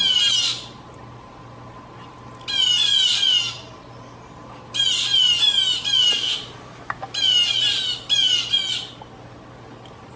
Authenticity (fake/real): real